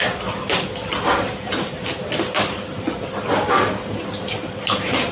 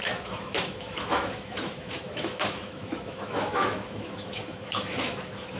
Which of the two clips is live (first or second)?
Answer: first